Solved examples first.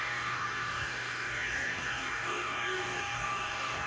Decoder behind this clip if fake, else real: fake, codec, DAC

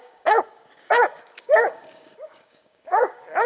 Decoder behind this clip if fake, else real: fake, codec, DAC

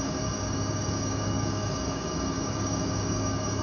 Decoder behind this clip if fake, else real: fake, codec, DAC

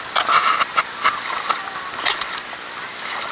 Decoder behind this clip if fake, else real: real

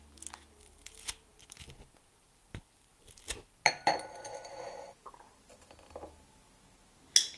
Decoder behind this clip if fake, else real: real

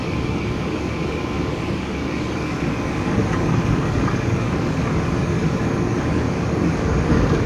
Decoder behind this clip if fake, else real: fake, codec, DAC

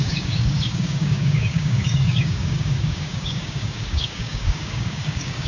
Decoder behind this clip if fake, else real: fake, codec, DAC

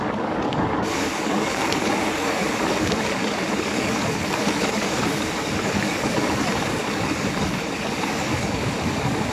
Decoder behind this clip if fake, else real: fake, codec, DAC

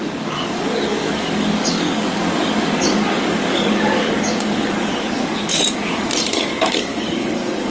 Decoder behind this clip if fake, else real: fake, codec, DAC